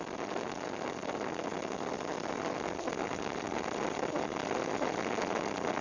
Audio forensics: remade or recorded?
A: recorded